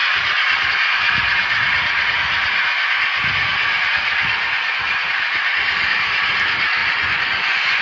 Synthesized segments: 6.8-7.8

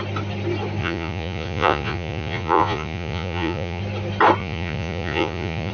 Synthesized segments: 0.8-3.8; 4.4-5.7

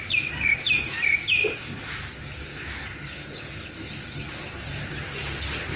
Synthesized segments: none

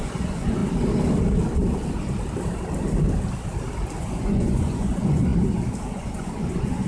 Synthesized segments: 0.0-0.6; 4.0-5.3; 5.8-6.9